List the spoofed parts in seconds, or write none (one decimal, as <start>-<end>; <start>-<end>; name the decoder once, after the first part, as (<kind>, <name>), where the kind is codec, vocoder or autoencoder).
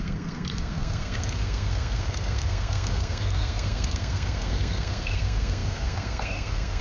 0.0-6.8 (codec, SNAC)